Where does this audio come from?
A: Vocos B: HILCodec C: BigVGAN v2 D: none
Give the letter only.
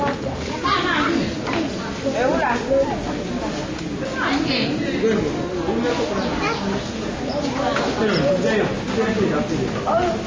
D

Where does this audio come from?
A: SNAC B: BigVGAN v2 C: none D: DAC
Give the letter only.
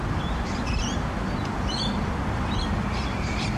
B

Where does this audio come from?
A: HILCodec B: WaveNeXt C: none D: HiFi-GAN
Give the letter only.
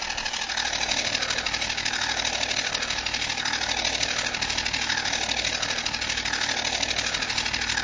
C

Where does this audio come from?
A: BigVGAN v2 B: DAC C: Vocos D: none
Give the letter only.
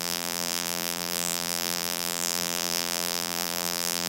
A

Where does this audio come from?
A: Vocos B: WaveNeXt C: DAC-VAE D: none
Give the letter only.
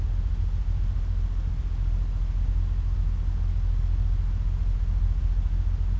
D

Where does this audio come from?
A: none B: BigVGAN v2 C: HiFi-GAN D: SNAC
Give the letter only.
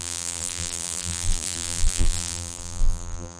B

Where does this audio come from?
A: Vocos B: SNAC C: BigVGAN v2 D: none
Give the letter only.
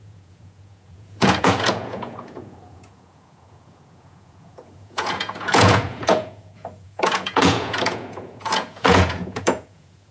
A